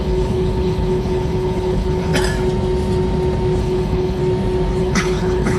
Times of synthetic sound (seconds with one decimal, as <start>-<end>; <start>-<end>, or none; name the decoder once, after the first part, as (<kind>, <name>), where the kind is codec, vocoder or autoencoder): 0.0-2.1 (codec, HILCodec); 3.6-4.2; 4.8-5.6